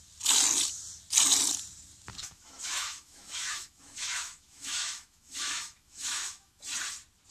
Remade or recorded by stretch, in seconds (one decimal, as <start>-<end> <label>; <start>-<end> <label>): 0.0-2.2 recorded; 2.2-6.6 remade; 6.6-7.3 recorded

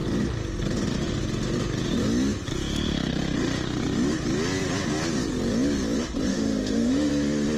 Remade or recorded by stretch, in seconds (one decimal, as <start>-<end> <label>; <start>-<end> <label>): 0.0-6.3 recorded; 6.3-7.1 remade; 7.1-7.6 recorded